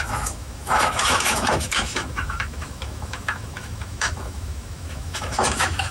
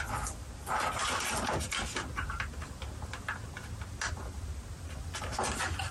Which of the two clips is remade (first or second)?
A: first